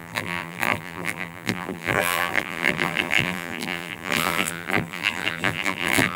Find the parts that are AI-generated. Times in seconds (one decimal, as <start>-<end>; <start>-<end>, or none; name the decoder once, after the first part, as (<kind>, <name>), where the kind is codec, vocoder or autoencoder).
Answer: 0.0-6.2 (vocoder, BigVGAN v2)